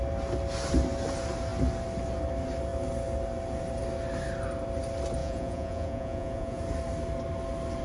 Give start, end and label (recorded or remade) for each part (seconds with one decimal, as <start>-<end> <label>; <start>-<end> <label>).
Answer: 0.0-5.2 recorded; 5.2-6.6 remade; 6.6-7.8 recorded

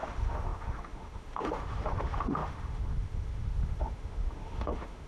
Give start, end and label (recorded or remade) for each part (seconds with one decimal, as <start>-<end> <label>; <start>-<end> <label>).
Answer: 0.0-5.1 remade